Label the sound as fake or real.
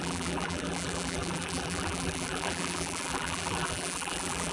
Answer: fake